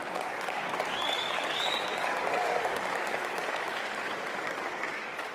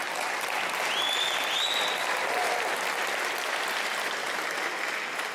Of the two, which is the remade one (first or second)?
first